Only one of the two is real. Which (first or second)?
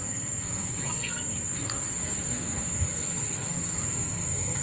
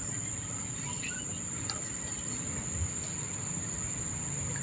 second